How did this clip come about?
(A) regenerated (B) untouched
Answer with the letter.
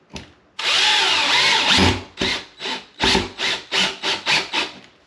B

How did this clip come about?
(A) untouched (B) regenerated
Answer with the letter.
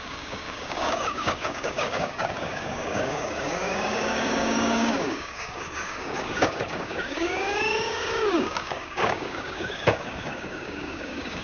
B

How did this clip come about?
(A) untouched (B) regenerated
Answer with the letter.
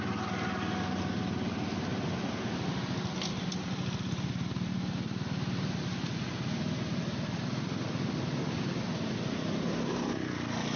A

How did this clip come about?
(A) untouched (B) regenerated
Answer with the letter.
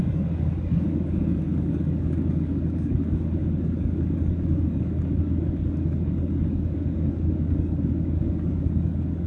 B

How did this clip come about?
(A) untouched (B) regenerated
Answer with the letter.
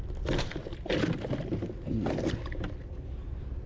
A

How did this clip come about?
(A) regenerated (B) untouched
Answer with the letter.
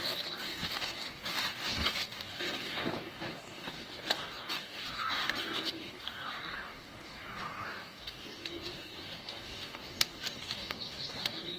A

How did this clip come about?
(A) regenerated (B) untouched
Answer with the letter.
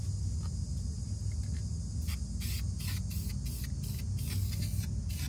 B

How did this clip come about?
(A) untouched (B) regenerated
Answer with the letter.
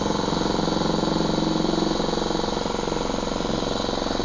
A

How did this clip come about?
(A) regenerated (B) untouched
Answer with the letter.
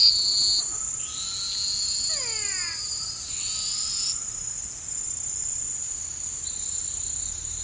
B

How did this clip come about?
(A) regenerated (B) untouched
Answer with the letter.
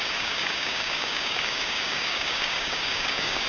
A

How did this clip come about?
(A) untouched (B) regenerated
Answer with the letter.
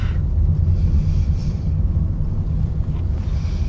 A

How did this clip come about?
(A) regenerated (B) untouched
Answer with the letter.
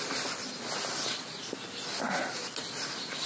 B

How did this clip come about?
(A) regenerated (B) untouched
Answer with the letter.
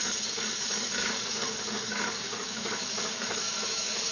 A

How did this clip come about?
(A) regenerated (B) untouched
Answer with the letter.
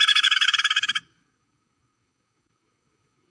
A